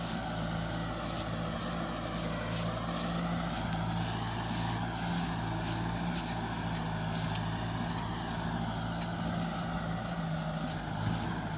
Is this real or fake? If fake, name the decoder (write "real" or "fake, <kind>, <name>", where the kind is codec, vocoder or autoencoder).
real